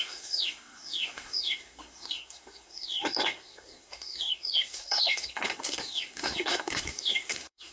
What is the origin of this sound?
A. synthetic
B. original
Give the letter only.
A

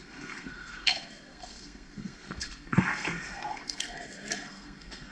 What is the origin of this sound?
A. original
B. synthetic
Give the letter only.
B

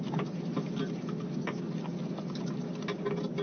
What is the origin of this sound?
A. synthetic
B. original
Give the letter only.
B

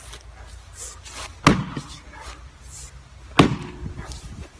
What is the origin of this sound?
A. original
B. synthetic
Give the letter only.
A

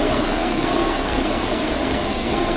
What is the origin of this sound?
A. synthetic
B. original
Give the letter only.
A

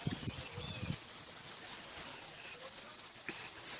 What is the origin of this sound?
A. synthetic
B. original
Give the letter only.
B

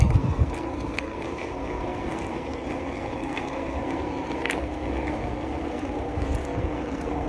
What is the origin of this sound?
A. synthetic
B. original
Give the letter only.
A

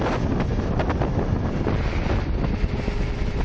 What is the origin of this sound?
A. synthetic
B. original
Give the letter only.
B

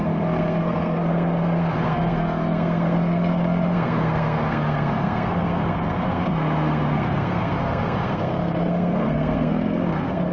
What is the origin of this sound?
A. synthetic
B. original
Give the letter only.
A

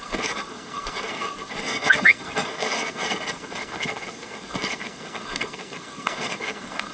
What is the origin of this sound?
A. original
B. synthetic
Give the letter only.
B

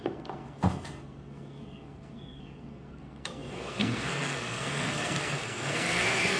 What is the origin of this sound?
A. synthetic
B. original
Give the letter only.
A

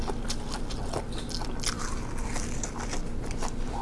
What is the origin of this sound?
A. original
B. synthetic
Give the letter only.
A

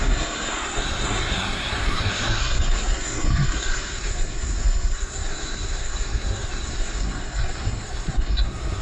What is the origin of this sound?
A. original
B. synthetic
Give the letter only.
B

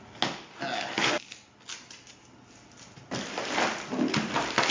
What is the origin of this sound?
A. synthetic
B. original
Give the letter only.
B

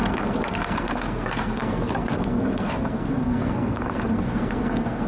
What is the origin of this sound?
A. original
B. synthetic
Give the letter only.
B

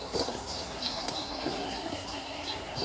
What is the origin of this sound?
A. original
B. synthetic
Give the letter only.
B